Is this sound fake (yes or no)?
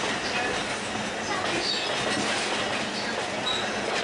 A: no